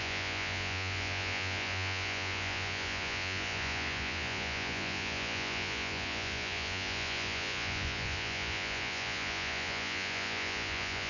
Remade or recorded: remade